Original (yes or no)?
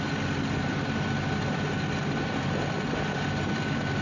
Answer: yes